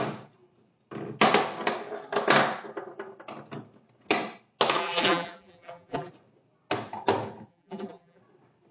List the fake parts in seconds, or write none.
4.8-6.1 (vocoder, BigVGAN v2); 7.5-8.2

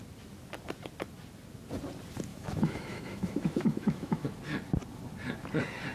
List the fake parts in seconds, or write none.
2.3-4.3 (autoencoder, DAC-VAE)

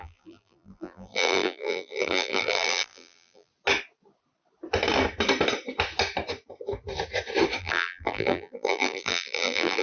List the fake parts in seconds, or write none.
0.0-3.5 (vocoder, BigVGAN v2); 7.6-9.8

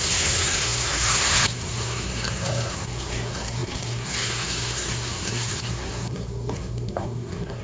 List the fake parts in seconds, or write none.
0.0-7.6 (codec, SNAC)

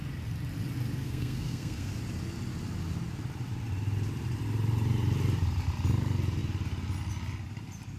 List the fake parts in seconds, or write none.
1.0-1.9 (codec, SNAC)

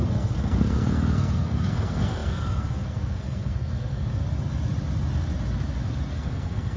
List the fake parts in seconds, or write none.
0.0-4.2 (codec, SNAC); 6.1-6.8

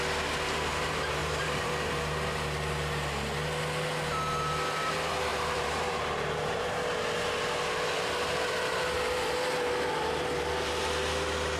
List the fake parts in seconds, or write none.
1.2-1.7 (vocoder, BigVGAN v2); 5.3-6.7